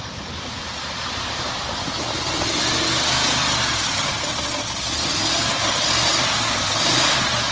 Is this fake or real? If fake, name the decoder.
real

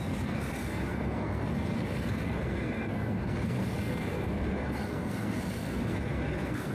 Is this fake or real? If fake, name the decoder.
fake, codec, SNAC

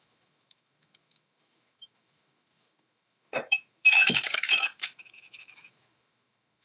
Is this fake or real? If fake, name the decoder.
fake, autoencoder, DAC-VAE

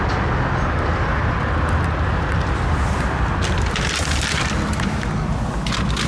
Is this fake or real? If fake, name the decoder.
real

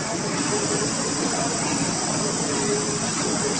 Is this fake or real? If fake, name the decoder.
real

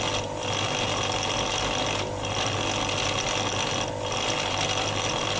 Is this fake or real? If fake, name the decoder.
real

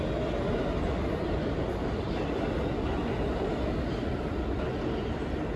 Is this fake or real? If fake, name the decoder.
real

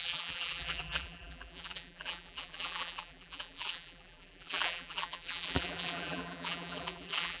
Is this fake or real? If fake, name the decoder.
fake, vocoder, BigVGAN v2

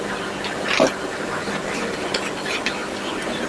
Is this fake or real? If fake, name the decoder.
real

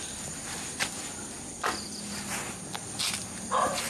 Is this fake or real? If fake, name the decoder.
real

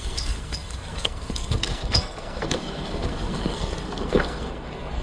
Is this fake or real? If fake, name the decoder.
fake, codec, SNAC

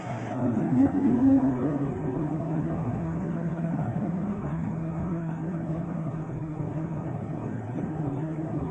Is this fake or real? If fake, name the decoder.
fake, codec, SNAC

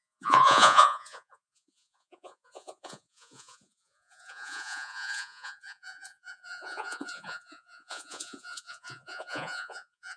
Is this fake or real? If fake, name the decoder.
fake, vocoder, Vocos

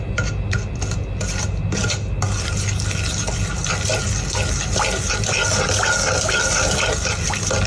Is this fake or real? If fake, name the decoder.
real